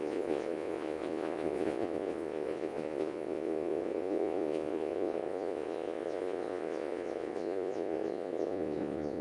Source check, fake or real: fake